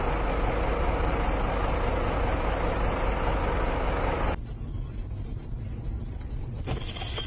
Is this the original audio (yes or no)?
yes